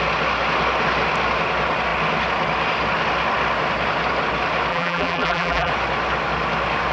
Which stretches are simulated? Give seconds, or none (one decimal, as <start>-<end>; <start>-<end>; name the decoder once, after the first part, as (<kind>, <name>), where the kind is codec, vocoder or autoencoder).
4.7-5.7 (vocoder, BigVGAN v2)